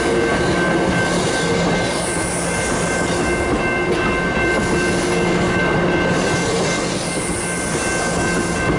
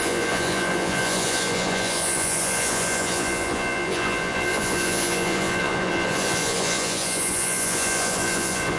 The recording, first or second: first